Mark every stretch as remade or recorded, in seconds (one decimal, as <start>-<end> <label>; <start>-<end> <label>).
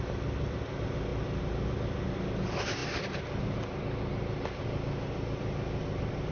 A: 0.0-6.3 recorded